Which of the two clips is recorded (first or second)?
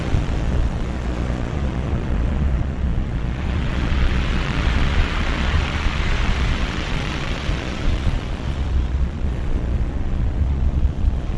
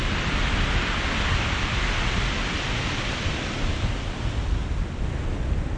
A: second